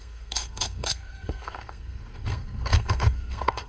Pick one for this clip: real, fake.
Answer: fake